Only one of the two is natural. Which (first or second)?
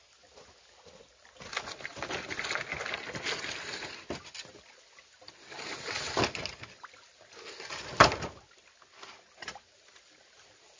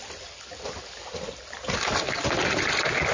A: first